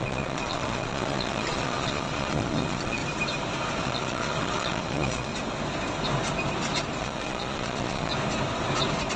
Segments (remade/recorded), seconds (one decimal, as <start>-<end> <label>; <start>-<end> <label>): 0.0-3.0 remade; 3.0-3.8 recorded; 3.8-5.3 remade; 5.3-7.0 recorded; 7.0-8.1 remade; 8.1-9.2 recorded